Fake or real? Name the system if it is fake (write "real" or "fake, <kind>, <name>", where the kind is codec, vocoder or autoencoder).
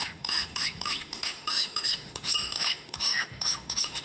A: fake, autoencoder, DAC-VAE